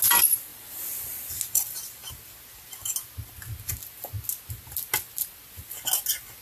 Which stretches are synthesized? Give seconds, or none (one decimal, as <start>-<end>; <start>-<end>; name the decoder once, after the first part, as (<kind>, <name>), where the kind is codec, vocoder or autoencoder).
none